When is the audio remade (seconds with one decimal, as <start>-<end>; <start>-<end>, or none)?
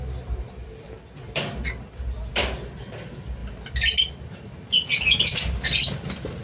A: 0.6-1.4